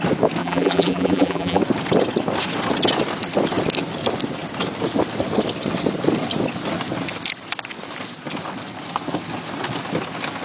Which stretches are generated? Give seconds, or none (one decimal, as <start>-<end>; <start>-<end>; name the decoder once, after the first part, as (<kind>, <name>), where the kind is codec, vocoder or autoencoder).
0.4-1.6 (vocoder, BigVGAN v2)